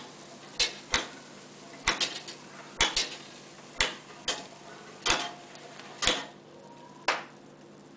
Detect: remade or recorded recorded